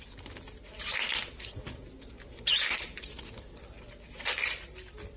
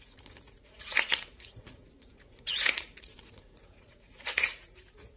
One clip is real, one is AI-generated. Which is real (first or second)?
first